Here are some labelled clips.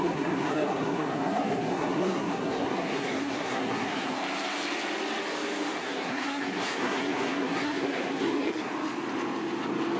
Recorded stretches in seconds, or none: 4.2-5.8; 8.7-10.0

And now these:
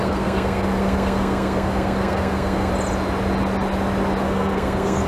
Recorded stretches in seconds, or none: 2.7-4.2